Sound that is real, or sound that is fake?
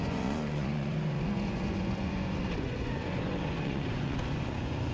fake